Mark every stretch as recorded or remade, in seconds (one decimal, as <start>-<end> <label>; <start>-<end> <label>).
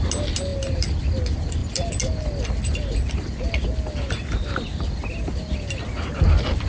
0.0-6.7 recorded